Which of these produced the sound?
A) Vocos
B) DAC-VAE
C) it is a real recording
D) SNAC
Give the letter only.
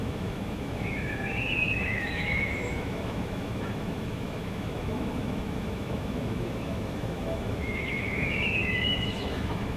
B